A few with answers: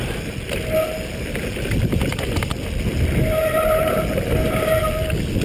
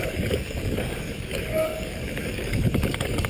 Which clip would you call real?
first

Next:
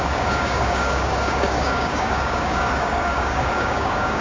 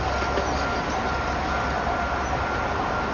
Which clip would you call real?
second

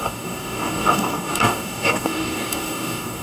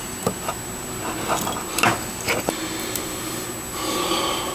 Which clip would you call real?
second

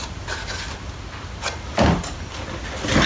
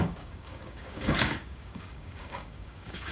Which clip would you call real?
first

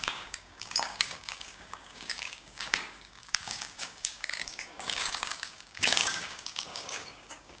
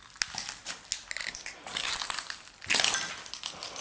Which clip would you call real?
second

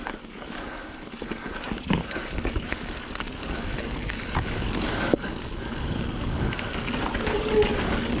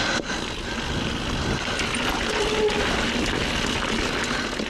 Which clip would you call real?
second